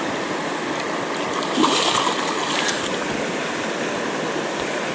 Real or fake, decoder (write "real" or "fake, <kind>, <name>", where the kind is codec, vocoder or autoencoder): real